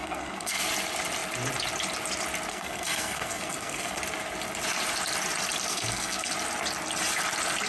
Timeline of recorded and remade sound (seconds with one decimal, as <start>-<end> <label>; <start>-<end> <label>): 0.0-0.7 remade; 0.7-2.5 recorded; 2.5-4.0 remade; 4.0-5.7 recorded; 5.7-6.3 remade; 6.3-7.7 recorded